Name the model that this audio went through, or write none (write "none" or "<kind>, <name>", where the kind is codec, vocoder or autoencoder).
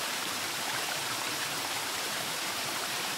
vocoder, BigVGAN v2